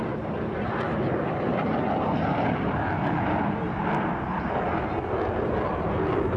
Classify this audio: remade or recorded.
recorded